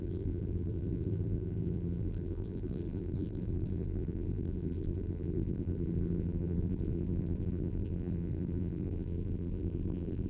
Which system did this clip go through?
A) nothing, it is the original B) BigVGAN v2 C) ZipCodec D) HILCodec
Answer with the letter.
B